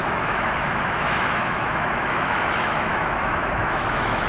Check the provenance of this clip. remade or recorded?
remade